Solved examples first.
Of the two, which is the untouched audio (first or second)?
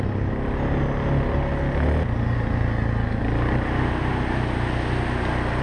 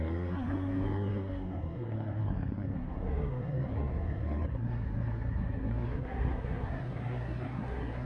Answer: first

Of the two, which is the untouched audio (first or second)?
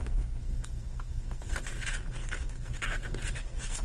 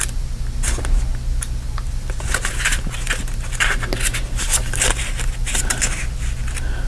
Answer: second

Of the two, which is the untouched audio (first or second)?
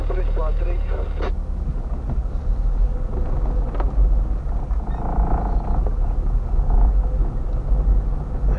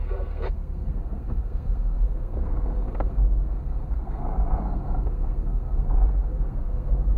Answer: first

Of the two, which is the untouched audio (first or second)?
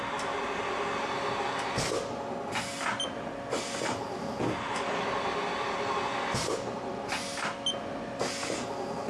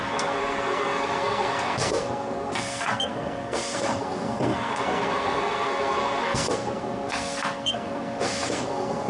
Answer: first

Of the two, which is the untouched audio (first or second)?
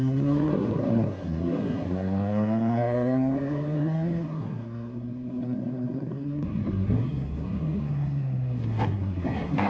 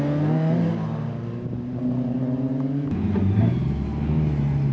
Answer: second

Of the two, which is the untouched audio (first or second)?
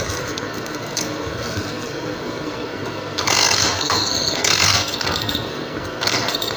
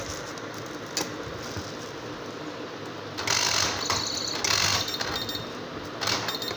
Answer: second